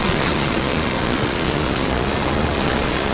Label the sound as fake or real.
fake